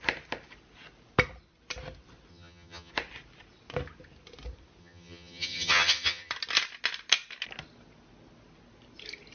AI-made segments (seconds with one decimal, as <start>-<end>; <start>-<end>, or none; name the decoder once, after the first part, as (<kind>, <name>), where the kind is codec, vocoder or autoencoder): 2.3-2.9 (vocoder, HiFi-GAN); 4.8-6.3